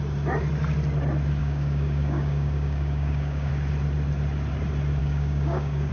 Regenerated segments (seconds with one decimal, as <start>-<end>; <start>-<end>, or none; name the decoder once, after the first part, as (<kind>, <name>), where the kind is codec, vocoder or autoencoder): 1.4-3.5 (codec, DAC); 5.0-5.9